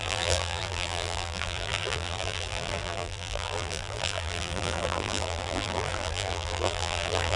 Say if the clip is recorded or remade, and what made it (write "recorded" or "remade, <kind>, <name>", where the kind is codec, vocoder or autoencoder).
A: remade, vocoder, BigVGAN v2